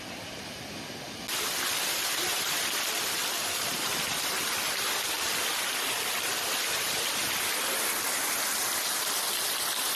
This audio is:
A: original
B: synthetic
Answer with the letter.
A